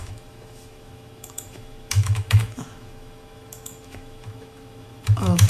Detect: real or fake fake